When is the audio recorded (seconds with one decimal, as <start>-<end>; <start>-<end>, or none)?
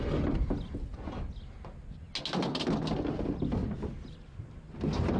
0.0-5.2